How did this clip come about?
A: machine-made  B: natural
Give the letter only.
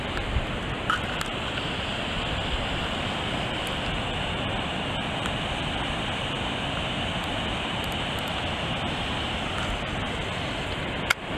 B